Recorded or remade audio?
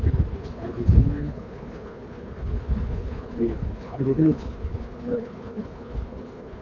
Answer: remade